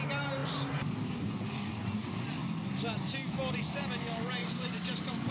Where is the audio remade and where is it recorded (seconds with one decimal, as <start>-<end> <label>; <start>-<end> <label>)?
0.0-0.4 recorded; 0.4-1.1 remade; 1.1-4.4 recorded; 4.4-5.3 remade